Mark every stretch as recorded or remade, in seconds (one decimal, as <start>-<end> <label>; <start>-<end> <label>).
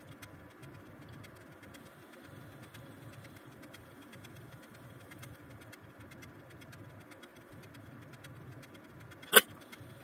0.0-10.0 recorded